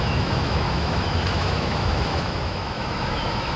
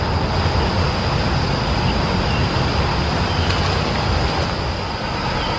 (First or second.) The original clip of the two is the second